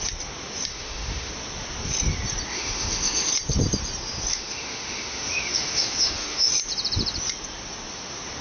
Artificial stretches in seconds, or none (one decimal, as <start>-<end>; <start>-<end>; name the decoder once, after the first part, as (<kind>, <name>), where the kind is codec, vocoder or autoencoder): 0.7-1.3 (autoencoder, DAC-VAE); 2.5-3.3; 4.3-6.5